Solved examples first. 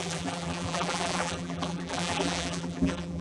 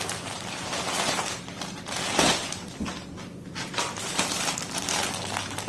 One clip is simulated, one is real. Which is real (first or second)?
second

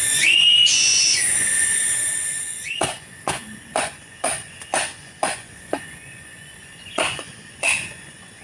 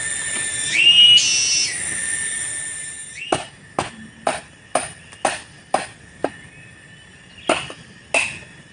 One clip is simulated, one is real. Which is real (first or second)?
second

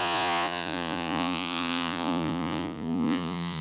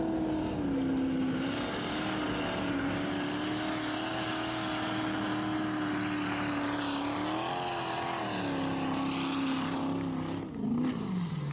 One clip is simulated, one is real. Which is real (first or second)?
second